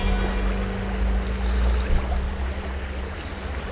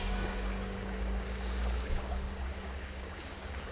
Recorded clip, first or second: first